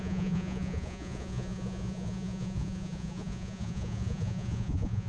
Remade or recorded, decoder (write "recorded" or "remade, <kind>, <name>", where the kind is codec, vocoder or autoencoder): remade, vocoder, Vocos